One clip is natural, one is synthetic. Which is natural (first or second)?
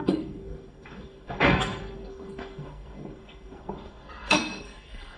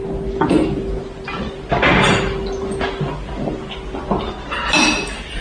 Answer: second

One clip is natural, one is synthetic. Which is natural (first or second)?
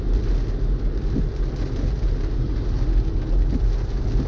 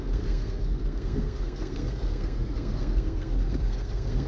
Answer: first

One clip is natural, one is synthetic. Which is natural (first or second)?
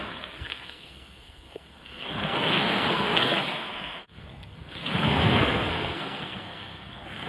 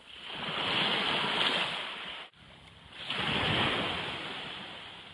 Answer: second